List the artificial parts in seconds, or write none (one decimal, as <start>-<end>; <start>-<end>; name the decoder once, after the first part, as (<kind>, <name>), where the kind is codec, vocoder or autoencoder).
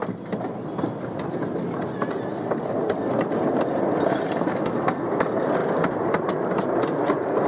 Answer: none